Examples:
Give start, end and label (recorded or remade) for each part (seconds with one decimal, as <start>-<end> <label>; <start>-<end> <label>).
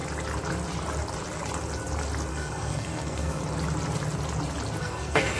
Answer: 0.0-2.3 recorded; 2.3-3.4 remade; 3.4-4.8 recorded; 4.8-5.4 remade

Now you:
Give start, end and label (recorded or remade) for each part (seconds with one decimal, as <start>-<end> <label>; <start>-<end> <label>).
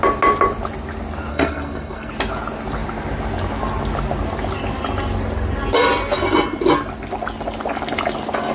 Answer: 0.0-1.3 recorded; 1.3-2.1 remade; 2.1-8.5 recorded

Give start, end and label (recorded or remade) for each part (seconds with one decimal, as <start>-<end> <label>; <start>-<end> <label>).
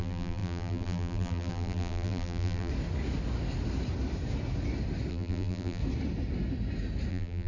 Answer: 0.0-2.7 remade; 2.7-5.1 recorded; 5.1-5.8 remade; 5.8-7.1 recorded; 7.1-7.5 remade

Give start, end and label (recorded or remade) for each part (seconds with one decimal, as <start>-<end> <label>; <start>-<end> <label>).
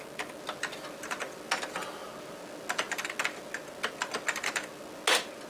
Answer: 0.0-5.5 recorded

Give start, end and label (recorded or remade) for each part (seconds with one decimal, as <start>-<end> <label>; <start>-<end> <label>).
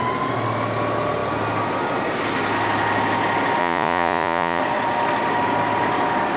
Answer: 0.0-3.6 recorded; 3.6-4.6 remade; 4.6-6.4 recorded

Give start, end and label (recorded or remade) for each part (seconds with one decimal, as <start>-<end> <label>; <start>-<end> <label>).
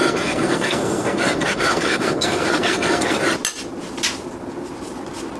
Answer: 0.0-3.2 remade; 3.2-5.4 recorded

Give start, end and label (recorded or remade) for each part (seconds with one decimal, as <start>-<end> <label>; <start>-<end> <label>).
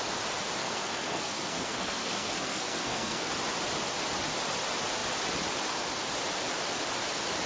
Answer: 0.0-0.6 recorded; 0.6-3.3 remade; 3.3-7.5 recorded